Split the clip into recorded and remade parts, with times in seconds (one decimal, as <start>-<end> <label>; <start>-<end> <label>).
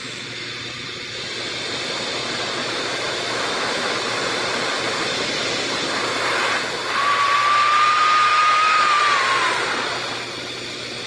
0.0-0.5 remade; 0.5-2.6 recorded; 2.6-4.0 remade; 4.0-8.3 recorded; 8.3-9.0 remade; 9.0-11.1 recorded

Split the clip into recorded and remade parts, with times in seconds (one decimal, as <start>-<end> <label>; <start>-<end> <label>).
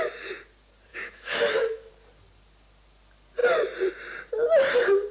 0.0-0.9 recorded; 0.9-1.9 remade; 1.9-5.1 recorded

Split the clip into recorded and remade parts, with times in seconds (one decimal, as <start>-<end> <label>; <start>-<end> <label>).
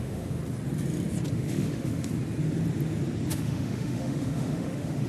0.0-0.4 remade; 0.4-1.3 recorded; 1.3-2.1 remade; 2.1-3.3 recorded; 3.3-5.1 remade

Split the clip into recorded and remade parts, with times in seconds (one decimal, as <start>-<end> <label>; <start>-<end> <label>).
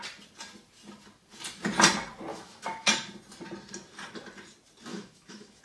0.0-2.3 recorded; 2.3-2.9 remade; 2.9-4.9 recorded; 4.9-5.6 remade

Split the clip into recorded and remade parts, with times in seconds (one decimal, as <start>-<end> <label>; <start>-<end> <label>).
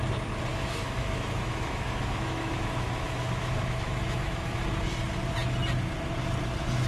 0.0-0.5 recorded; 0.5-4.6 remade; 4.6-6.9 recorded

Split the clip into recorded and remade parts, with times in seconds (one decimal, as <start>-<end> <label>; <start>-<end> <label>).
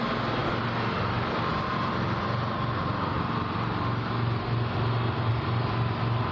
0.0-6.3 recorded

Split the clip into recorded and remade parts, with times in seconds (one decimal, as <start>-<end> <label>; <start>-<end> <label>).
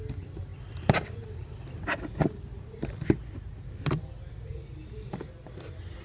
0.0-6.0 recorded